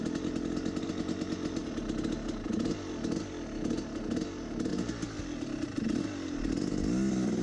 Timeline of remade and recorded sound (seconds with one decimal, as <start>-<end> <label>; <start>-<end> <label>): 0.0-7.4 recorded